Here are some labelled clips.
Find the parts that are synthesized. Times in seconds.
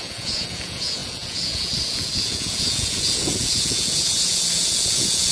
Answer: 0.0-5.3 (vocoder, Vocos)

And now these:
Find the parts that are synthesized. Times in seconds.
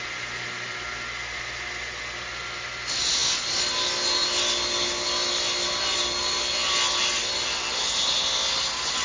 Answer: none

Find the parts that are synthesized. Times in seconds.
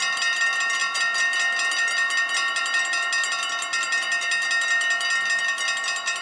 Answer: none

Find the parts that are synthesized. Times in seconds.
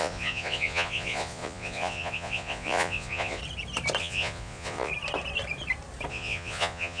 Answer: 0.0-3.4 (vocoder, Vocos); 4.0-4.9; 6.1-7.0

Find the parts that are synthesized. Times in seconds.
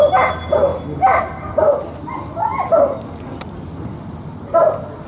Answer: none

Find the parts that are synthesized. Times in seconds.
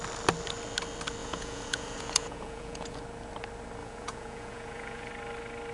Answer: 1.2-3.0 (vocoder, Vocos); 3.8-5.1